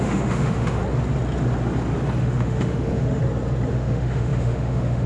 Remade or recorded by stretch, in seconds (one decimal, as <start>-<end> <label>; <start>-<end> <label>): 0.0-0.8 remade; 0.8-2.2 recorded; 2.2-3.2 remade; 3.2-3.7 recorded; 3.7-5.1 remade

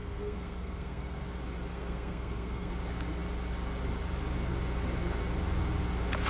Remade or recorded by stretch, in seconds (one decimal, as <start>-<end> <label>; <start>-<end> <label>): 0.0-1.2 remade; 1.2-1.7 recorded; 1.7-2.7 remade; 2.7-6.3 recorded

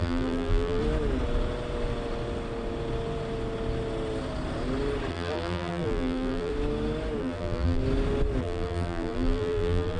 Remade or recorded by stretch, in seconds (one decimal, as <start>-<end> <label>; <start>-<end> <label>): 0.0-0.8 remade; 0.8-5.1 recorded; 5.1-6.5 remade; 6.5-7.2 recorded; 7.2-7.8 remade; 7.8-8.4 recorded; 8.4-10.0 remade

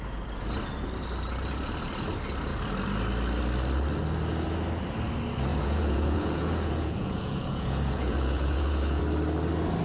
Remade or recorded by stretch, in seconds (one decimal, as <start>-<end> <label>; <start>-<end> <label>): 0.0-5.5 recorded; 5.5-9.0 remade; 9.0-9.8 recorded

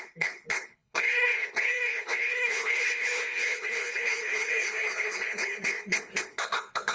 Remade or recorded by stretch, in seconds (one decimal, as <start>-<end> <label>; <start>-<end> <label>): 0.0-6.9 remade

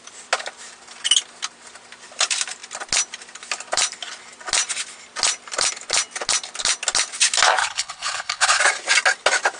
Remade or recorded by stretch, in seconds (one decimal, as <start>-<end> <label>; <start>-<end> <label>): 0.0-7.6 recorded; 7.6-8.6 remade; 8.6-9.6 recorded

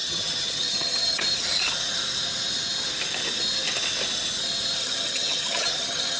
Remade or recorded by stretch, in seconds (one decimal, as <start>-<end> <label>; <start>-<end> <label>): 0.0-1.2 remade; 1.2-4.8 recorded; 4.8-6.2 remade